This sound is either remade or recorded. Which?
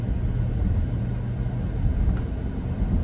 recorded